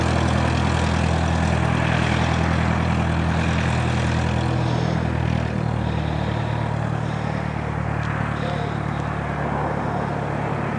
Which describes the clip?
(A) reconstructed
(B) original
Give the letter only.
B